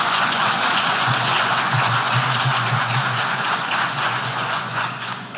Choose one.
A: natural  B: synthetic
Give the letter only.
B